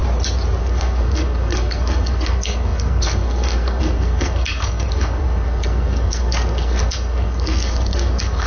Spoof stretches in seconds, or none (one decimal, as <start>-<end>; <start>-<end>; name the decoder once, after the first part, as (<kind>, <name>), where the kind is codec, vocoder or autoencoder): 0.6-8.5 (codec, SNAC)